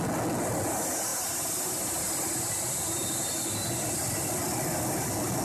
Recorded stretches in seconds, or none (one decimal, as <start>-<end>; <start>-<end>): 0.0-5.4